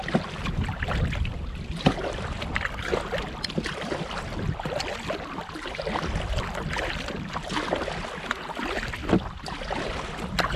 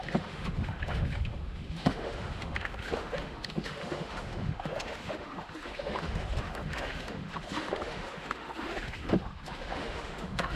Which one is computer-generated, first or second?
second